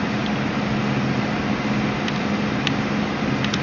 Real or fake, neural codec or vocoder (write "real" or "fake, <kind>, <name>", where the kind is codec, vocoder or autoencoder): real